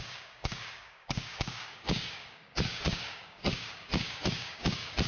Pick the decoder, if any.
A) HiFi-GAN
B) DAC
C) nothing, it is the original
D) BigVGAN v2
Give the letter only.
B